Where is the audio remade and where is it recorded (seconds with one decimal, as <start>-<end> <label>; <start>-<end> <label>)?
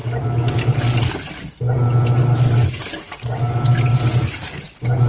0.0-0.8 remade; 0.8-2.2 recorded; 2.2-5.1 remade